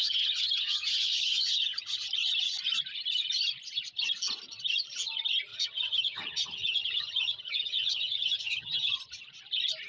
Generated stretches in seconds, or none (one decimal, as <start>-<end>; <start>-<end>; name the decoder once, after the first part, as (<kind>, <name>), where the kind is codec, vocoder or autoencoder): 0.0-2.1 (vocoder, HiFi-GAN); 5.5-8.9